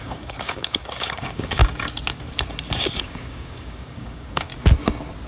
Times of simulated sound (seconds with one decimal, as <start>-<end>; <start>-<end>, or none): 0.0-1.6; 3.0-4.5